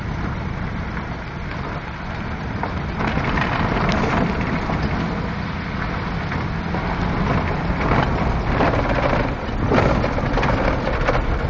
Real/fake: real